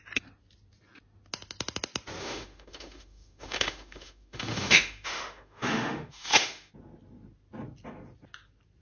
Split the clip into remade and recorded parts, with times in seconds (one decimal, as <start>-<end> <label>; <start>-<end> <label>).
0.0-2.2 recorded; 2.2-6.7 remade; 6.7-8.8 recorded